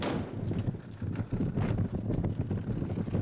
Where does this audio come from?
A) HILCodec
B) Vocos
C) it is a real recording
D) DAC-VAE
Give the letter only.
C